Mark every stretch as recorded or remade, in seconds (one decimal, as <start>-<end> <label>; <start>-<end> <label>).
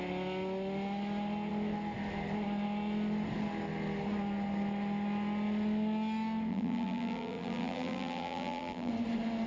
0.0-6.5 recorded; 6.5-8.9 remade; 8.9-9.5 recorded